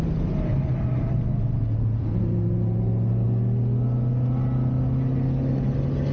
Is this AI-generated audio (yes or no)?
no